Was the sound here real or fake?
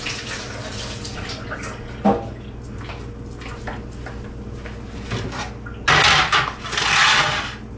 real